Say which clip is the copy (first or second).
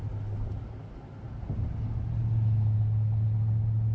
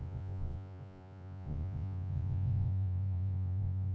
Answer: second